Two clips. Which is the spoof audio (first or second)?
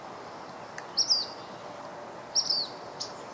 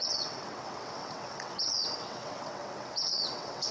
second